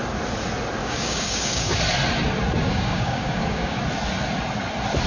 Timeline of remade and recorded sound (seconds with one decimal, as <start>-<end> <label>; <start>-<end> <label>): 0.0-0.8 recorded; 0.8-1.8 remade; 1.8-2.6 recorded; 2.6-3.8 remade; 3.8-5.1 recorded